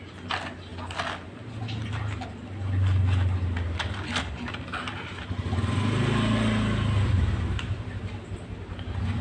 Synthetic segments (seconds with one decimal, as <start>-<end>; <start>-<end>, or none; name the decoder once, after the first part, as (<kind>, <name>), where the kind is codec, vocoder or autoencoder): none

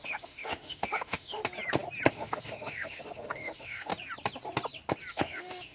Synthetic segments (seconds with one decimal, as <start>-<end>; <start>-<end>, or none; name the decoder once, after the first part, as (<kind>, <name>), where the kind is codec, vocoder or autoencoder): 0.0-1.4 (autoencoder, DAC-VAE); 2.1-3.9; 5.1-5.7

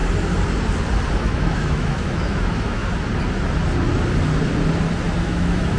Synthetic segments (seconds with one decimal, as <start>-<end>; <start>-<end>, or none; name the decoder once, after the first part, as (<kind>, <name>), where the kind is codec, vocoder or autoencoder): 1.2-2.8 (autoencoder, DAC-VAE); 5.2-5.8